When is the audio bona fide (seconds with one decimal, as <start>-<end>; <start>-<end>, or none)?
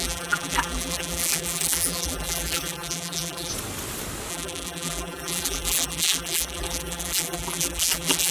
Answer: 3.5-4.3